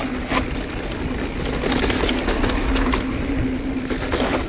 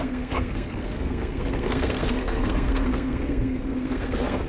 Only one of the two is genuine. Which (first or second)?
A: first